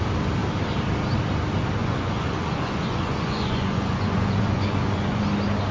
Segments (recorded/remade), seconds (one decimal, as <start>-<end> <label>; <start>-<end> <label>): 0.0-1.8 recorded; 1.8-5.2 remade; 5.2-5.7 recorded